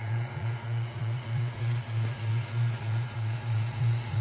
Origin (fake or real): fake